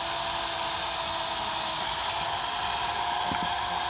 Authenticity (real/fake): real